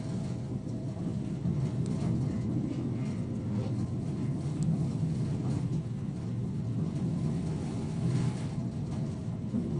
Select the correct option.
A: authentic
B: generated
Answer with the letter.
B